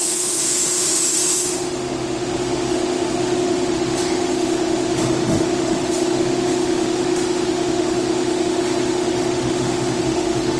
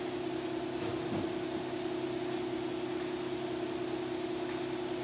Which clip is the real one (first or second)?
second